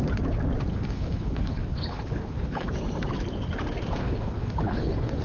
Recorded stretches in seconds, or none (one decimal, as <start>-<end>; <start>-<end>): 0.0-0.7; 2.7-4.0